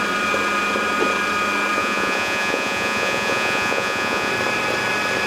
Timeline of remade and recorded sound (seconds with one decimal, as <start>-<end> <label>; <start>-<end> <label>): 0.0-1.8 recorded; 1.8-4.3 remade; 4.3-5.3 recorded